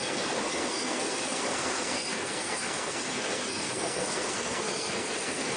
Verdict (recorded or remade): remade